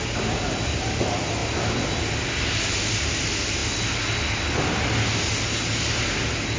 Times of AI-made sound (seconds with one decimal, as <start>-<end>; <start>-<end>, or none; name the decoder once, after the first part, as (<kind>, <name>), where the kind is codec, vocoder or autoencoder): none